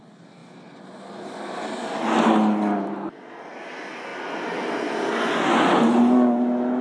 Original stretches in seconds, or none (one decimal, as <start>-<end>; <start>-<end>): 0.0-6.8